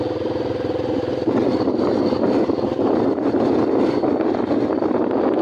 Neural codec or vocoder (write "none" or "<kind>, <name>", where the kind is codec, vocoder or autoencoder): none